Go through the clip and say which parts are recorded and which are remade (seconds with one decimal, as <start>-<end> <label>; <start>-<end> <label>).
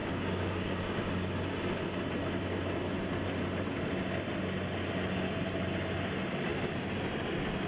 0.0-1.1 remade; 1.1-7.7 recorded